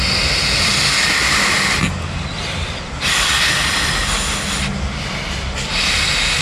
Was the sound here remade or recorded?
recorded